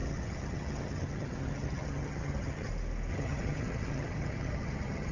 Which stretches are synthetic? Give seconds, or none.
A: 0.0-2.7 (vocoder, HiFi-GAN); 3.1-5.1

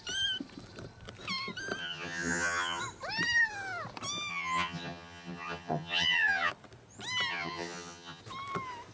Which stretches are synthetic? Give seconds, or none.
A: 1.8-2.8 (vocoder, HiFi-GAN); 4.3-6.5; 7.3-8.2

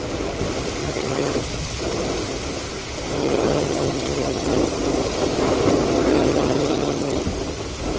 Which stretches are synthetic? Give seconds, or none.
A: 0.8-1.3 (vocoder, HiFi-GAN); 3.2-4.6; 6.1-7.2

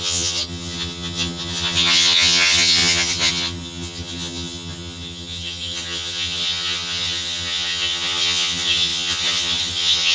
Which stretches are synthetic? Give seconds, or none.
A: 0.0-10.1 (vocoder, HiFi-GAN)

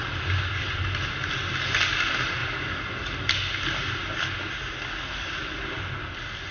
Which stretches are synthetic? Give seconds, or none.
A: none

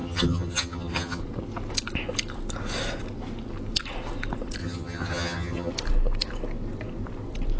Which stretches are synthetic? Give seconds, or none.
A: 0.0-1.2 (vocoder, HiFi-GAN); 4.6-5.7